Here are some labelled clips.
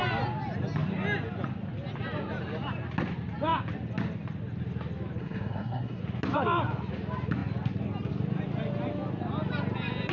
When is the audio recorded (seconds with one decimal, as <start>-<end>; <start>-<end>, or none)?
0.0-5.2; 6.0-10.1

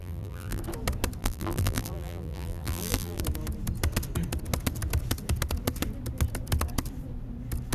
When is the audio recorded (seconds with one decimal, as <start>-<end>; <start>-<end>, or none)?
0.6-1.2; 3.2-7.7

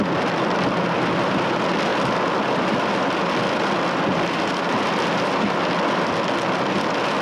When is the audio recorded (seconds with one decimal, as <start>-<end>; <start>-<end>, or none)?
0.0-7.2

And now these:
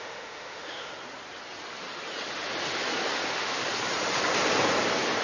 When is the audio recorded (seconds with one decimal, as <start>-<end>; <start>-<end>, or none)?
0.9-3.3; 3.7-5.2